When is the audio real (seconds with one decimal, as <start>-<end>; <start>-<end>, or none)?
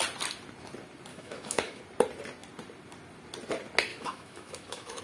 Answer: 0.0-1.1; 1.8-3.9